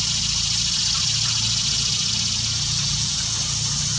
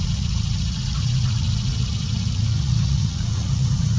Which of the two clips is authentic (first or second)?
first